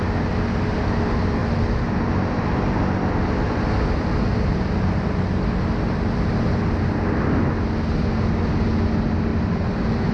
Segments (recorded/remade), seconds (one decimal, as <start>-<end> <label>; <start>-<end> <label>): 0.0-9.3 recorded; 9.3-10.1 remade